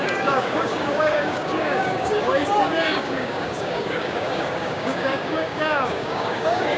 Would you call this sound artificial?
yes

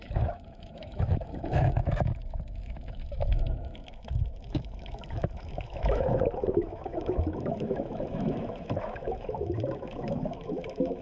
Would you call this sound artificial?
yes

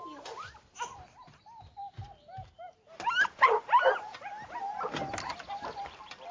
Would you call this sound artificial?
no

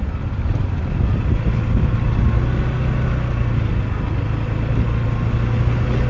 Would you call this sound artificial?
no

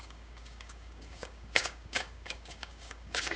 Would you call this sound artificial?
yes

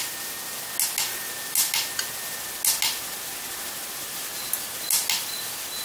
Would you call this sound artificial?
no